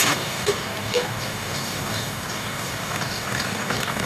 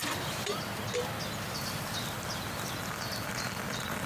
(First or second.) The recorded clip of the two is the second